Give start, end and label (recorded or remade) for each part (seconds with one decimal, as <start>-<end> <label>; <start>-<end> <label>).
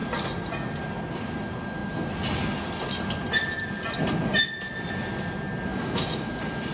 0.0-5.7 recorded; 5.7-6.3 remade; 6.3-6.7 recorded